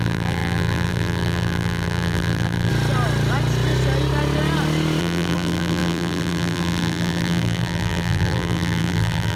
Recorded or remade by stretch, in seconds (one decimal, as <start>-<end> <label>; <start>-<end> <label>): 0.0-2.7 remade; 2.7-5.0 recorded; 5.0-9.4 remade